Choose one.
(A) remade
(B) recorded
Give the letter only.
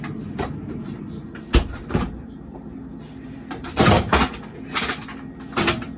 B